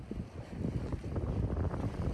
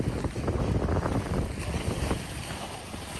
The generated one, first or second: first